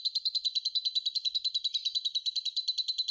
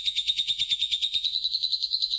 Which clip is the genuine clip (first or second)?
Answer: first